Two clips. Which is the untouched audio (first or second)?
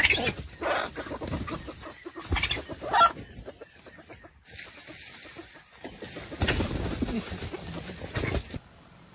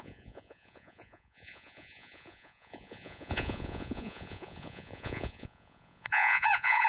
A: first